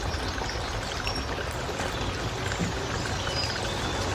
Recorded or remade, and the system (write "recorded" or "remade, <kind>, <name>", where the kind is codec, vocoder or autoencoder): recorded